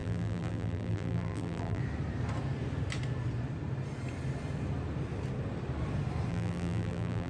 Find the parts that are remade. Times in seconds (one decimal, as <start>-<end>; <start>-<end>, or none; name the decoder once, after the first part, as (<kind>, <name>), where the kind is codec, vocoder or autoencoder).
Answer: 0.0-1.8 (vocoder, BigVGAN v2); 6.3-7.3